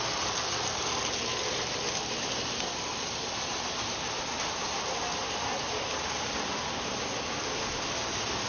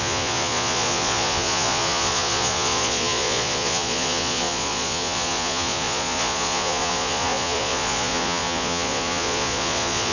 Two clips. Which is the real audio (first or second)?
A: first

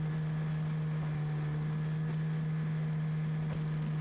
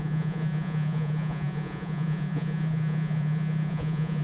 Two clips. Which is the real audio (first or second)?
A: first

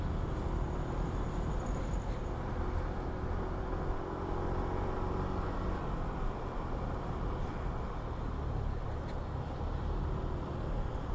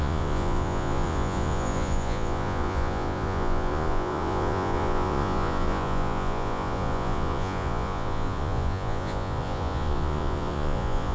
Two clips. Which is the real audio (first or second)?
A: first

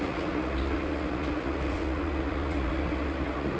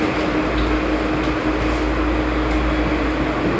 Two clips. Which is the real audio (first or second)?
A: second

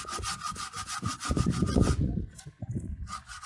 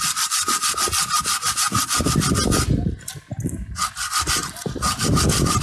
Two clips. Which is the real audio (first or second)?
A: second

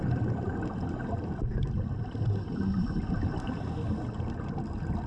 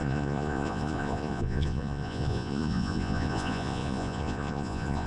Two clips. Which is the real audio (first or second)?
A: first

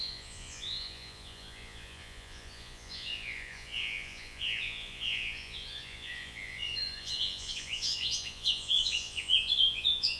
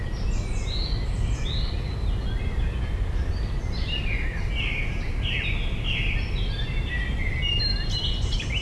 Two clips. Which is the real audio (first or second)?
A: second